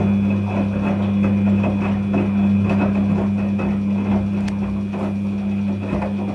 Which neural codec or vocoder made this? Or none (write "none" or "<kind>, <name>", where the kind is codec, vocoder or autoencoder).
none